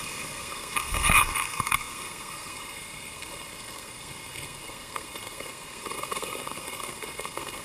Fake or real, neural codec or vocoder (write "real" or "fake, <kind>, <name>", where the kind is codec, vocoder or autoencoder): fake, codec, SNAC